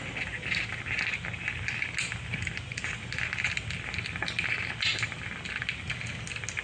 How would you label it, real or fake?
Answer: real